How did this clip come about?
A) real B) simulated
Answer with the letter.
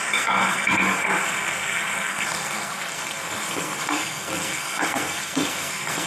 B